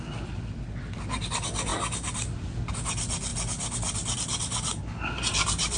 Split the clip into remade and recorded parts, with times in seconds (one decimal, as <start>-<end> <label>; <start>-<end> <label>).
0.0-5.8 recorded

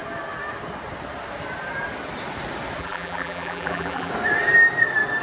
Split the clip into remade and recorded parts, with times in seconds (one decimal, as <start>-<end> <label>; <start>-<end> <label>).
0.0-2.8 recorded; 2.8-4.1 remade; 4.1-5.2 recorded

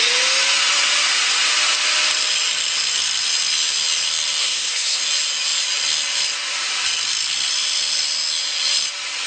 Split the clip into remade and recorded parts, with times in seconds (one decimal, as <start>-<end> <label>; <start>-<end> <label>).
0.0-4.4 recorded; 4.4-5.0 remade; 5.0-9.3 recorded

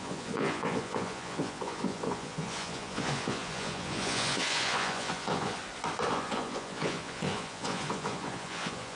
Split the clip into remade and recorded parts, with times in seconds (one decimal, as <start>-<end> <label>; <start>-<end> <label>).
0.0-5.6 remade; 5.6-6.1 recorded; 6.1-9.0 remade

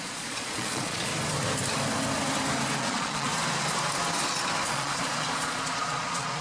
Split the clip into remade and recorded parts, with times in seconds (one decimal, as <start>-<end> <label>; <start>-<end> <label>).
0.0-1.1 remade; 1.1-2.8 recorded; 2.8-3.3 remade; 3.3-4.7 recorded; 4.7-6.4 remade

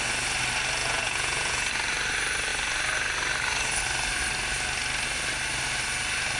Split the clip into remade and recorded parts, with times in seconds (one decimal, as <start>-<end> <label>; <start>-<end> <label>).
0.0-0.8 recorded; 0.8-1.7 remade; 1.7-6.4 recorded

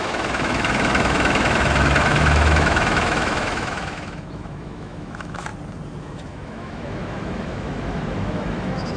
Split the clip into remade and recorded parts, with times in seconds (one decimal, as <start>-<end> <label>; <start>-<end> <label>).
0.0-5.5 remade; 5.5-6.0 recorded; 6.0-9.0 remade